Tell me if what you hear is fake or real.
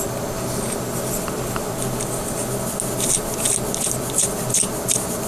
real